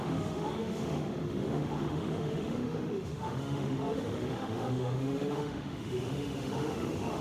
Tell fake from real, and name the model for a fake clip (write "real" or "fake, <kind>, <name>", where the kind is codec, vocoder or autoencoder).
fake, autoencoder, DAC-VAE